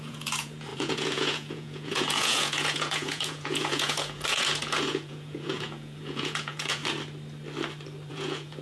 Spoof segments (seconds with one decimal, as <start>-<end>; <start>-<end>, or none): 0.0-6.8; 8.1-8.6